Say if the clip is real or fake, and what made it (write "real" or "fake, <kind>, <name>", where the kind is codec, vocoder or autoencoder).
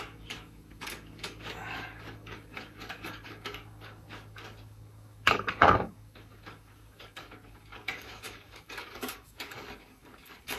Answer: fake, codec, DAC